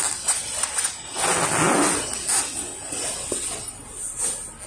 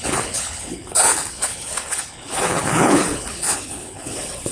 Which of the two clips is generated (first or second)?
second